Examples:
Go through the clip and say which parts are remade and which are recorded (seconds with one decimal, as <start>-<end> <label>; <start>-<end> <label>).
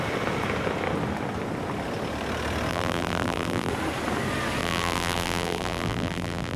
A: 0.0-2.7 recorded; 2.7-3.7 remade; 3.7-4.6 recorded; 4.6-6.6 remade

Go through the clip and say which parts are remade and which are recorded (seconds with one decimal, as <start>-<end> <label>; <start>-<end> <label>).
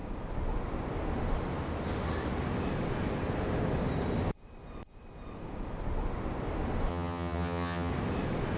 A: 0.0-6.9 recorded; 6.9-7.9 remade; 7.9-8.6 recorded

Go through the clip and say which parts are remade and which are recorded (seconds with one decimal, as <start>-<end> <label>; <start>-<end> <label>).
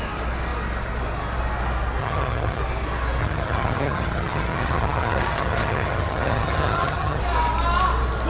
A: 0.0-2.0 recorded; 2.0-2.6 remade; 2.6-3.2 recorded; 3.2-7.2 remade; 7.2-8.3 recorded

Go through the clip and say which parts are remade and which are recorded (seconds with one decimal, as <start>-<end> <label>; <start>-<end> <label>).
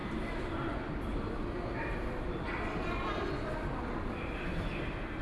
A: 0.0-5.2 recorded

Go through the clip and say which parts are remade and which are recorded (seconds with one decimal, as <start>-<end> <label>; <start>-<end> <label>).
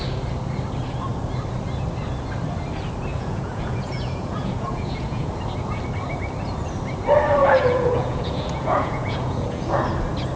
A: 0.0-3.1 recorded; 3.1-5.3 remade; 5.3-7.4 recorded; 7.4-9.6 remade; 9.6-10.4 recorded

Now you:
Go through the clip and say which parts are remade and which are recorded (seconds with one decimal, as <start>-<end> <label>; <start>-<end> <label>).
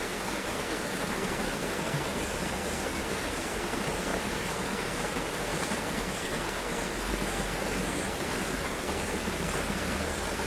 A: 0.0-10.5 remade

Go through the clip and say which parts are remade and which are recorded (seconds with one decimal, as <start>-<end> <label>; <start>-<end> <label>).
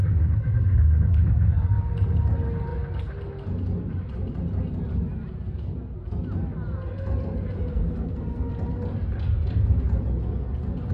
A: 0.0-1.9 remade; 1.9-7.7 recorded; 7.7-8.5 remade; 8.5-10.9 recorded